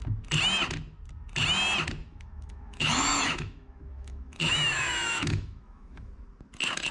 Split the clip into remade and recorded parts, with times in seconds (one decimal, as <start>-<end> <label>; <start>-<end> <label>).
0.0-2.0 recorded; 2.0-6.1 remade; 6.1-6.9 recorded